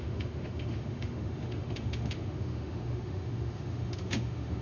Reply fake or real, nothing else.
fake